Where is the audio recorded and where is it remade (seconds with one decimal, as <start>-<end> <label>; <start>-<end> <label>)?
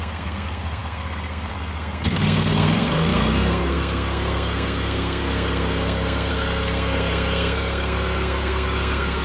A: 0.0-9.2 remade